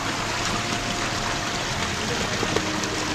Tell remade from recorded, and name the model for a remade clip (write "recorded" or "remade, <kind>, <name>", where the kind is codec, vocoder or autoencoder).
recorded